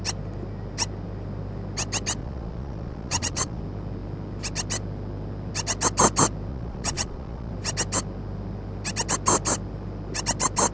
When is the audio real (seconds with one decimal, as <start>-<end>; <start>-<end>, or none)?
0.0-2.2; 3.6-6.5; 7.5-10.7